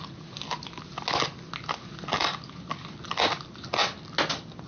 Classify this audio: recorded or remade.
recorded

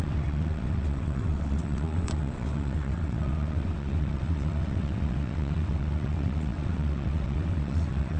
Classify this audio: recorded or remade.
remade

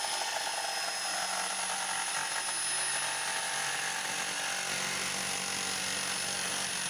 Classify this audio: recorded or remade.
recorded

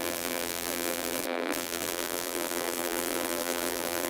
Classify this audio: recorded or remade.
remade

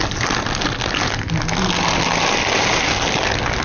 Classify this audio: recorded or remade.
recorded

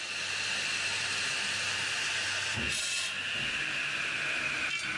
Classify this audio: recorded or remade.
recorded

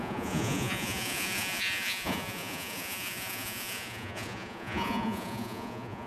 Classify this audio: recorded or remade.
remade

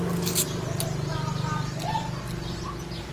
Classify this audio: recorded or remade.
recorded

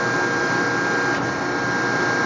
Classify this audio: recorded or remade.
recorded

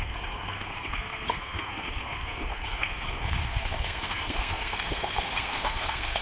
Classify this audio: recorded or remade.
remade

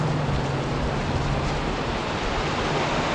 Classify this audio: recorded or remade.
recorded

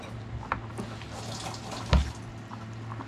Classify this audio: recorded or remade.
recorded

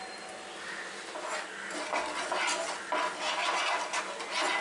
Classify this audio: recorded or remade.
recorded